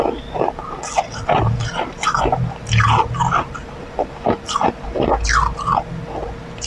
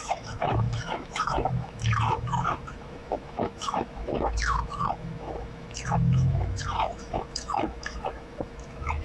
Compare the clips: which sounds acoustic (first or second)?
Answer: first